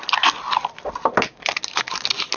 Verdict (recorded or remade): recorded